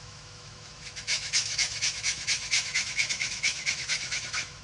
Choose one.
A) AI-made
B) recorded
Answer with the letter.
A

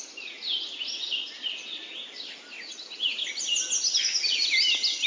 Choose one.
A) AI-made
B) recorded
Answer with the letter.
B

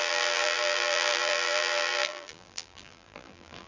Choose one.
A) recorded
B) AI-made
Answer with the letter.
B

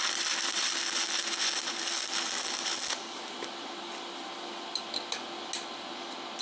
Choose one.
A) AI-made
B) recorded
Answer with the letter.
B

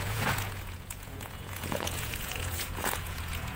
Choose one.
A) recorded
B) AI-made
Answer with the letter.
B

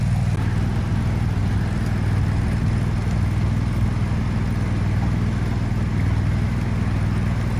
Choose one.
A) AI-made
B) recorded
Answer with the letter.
B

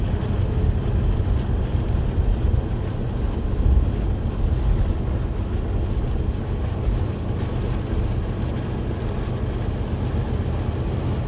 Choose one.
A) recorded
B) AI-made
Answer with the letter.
A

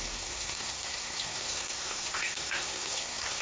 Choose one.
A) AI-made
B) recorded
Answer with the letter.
A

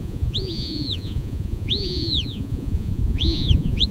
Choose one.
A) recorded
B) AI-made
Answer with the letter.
B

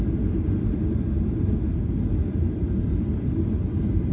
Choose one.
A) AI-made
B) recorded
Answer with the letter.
B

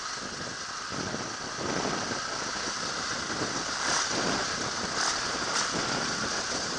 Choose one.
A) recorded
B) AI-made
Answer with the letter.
A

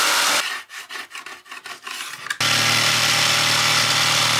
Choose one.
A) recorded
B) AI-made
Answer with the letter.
A